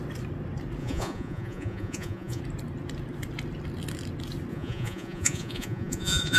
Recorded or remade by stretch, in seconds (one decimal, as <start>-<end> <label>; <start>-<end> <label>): 0.0-0.8 recorded; 0.8-2.4 remade; 2.4-4.5 recorded; 4.5-6.4 remade